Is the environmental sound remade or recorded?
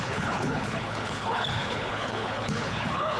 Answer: remade